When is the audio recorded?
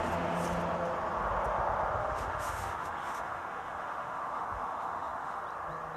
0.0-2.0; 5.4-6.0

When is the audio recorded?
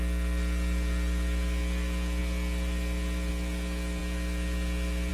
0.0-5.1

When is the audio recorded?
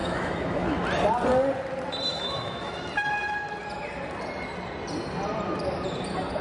0.8-2.1; 2.8-6.4